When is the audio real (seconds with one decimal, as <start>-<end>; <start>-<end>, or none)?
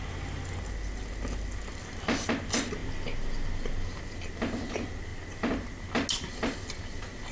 0.0-7.3